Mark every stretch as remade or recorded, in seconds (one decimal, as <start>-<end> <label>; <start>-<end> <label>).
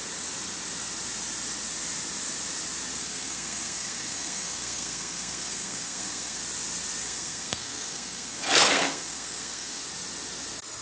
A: 0.0-3.0 recorded; 3.0-6.4 remade; 6.4-7.0 recorded; 7.0-9.8 remade; 9.8-10.8 recorded